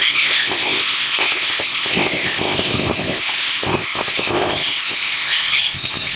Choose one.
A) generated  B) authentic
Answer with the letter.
A